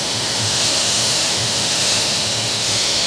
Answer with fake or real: fake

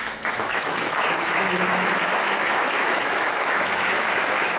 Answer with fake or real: fake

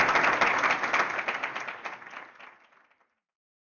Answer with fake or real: real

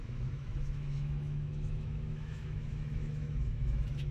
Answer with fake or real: fake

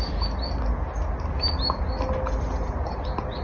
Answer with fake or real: real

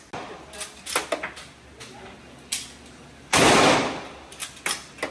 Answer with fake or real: real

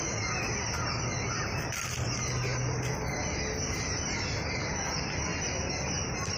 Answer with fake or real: real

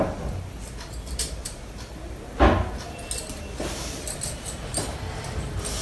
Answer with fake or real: real